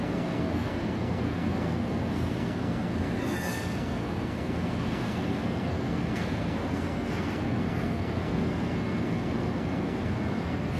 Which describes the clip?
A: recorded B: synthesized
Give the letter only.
B